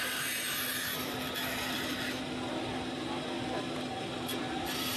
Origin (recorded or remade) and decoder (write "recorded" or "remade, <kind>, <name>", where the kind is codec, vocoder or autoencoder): recorded